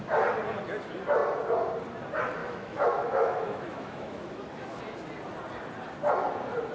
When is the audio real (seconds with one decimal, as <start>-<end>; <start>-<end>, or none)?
0.0-2.4; 4.8-6.7